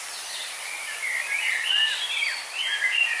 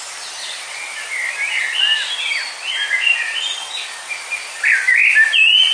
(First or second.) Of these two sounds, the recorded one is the second